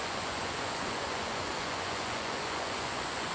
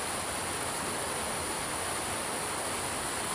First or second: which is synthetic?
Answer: first